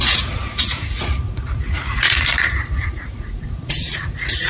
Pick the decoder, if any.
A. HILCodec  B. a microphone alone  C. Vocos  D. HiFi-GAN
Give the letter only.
C